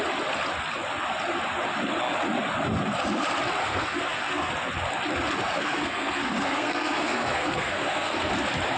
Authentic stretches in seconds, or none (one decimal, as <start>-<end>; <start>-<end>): 0.0-3.6; 4.5-5.6; 8.3-8.8